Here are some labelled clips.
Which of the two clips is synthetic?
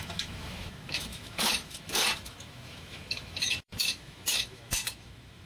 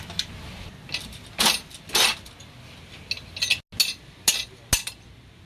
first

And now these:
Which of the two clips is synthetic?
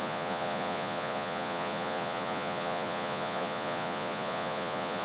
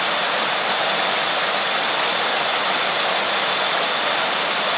first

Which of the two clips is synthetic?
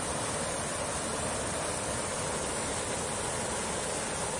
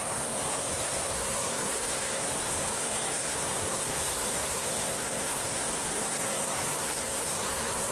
second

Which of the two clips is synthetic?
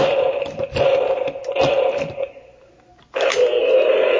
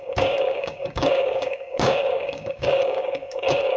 second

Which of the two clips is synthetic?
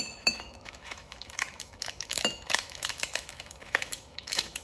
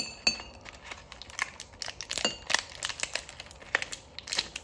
first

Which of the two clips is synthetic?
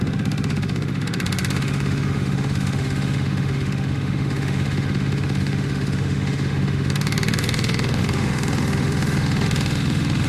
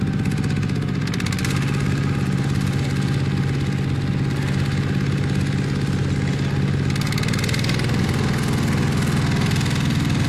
first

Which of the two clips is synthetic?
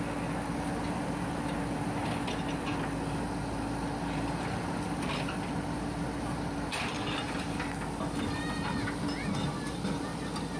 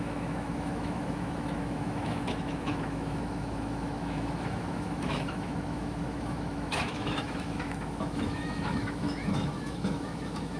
second